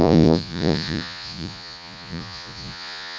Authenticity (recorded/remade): remade